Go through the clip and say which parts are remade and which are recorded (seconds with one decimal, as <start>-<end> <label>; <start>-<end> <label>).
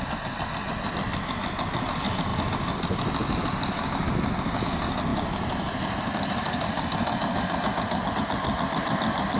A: 0.0-9.4 recorded